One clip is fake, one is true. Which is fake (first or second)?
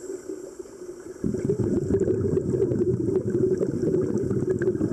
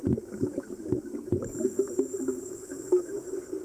second